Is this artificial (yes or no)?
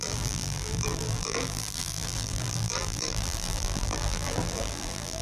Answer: yes